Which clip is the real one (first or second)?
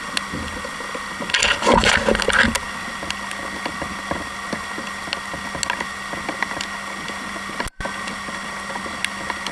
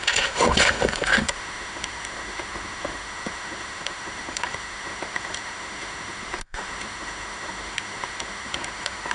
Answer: first